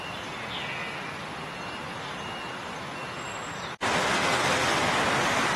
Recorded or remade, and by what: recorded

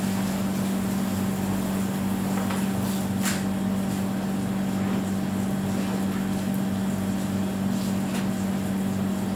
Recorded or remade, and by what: recorded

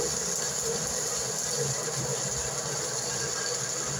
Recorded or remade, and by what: recorded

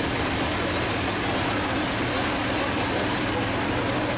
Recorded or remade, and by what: recorded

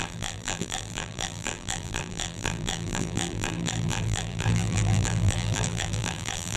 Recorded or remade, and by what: remade, vocoder, BigVGAN v2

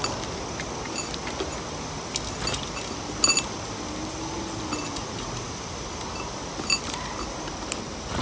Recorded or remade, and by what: recorded